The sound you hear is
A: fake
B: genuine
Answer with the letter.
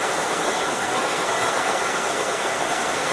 A